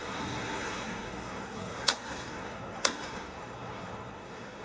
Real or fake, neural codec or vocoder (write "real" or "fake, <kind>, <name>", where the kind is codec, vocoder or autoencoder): fake, codec, SNAC